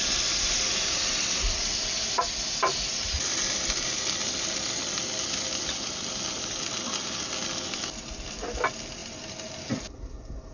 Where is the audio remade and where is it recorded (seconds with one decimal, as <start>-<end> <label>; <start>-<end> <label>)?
0.0-10.5 recorded

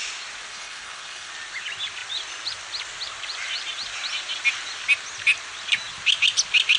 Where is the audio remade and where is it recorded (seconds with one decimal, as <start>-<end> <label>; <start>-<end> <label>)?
0.0-0.5 recorded; 0.5-1.3 remade; 1.3-6.8 recorded